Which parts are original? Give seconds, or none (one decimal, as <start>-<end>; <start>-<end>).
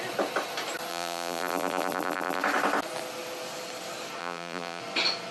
0.0-0.9; 2.4-4.2; 4.8-5.3